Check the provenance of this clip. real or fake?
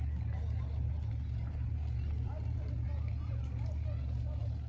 real